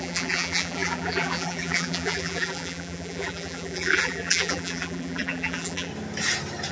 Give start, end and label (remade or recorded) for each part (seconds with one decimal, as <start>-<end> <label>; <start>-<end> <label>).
0.0-5.9 remade; 5.9-6.7 recorded